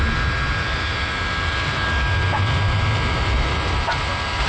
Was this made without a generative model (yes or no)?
yes